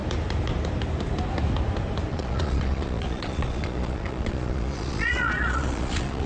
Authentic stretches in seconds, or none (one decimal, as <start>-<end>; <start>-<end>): 0.0-2.1